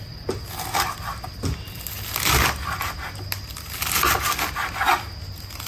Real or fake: real